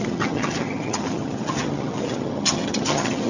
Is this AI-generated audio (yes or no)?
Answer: yes